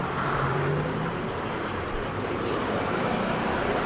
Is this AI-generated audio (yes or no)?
yes